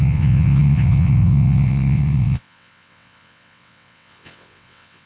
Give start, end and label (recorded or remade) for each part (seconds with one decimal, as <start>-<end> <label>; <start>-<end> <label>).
0.0-5.1 remade